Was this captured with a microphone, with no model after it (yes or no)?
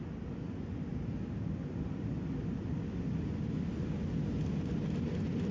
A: yes